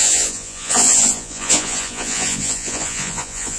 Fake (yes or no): yes